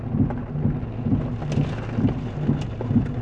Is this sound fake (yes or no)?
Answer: no